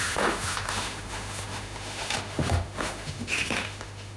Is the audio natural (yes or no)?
no